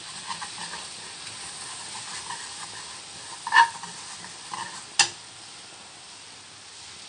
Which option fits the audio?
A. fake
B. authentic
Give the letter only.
B